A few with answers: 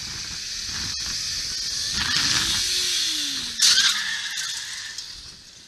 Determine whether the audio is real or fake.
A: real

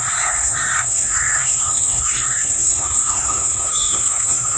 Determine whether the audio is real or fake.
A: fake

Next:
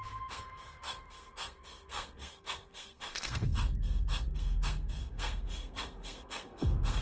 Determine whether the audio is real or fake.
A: fake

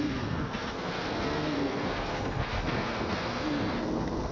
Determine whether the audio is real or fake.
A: fake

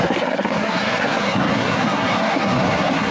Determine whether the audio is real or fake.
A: fake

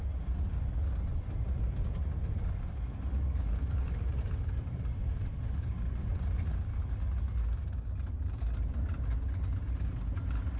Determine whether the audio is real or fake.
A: real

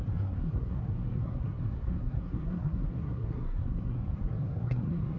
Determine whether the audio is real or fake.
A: fake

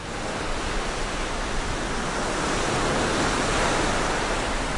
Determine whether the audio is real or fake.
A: real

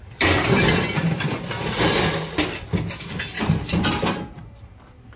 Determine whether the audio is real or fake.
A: real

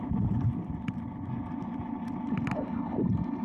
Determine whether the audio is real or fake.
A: real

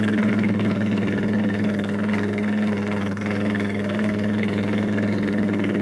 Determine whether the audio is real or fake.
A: fake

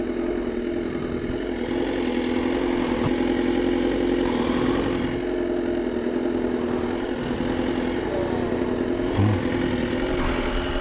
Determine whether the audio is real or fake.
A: real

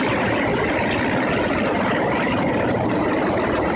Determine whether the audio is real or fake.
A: real